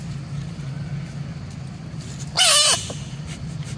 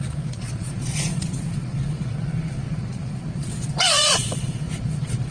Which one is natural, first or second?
first